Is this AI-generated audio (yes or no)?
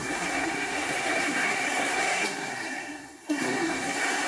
yes